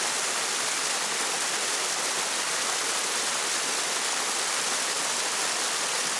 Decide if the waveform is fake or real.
real